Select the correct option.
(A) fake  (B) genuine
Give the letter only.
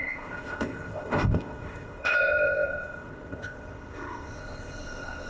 A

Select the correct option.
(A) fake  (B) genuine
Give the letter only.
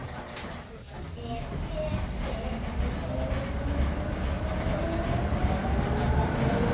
B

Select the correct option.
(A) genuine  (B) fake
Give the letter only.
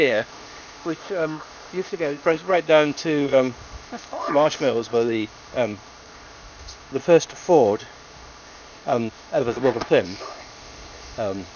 B